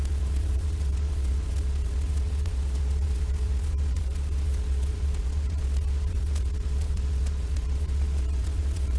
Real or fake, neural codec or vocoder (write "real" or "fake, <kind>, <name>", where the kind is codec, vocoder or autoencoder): fake, vocoder, Vocos